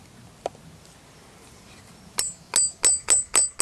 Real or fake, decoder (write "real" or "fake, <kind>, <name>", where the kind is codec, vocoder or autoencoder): real